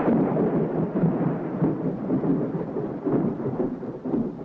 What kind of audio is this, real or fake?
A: real